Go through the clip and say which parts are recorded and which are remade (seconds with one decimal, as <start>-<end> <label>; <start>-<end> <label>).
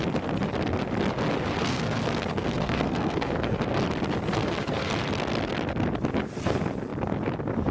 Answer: 0.0-1.6 recorded; 1.6-3.6 remade; 3.6-4.4 recorded; 4.4-4.9 remade; 4.9-7.7 recorded